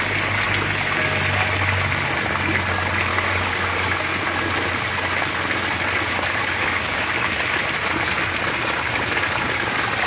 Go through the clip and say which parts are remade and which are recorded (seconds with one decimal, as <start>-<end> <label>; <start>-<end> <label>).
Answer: 0.0-3.1 recorded; 3.1-4.2 remade; 4.2-6.4 recorded; 6.4-7.1 remade; 7.1-10.1 recorded